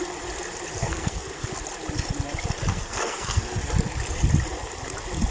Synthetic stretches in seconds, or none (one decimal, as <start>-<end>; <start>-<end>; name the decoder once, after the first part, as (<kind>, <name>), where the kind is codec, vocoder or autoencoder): 0.8-1.5 (codec, SNAC); 2.7-3.4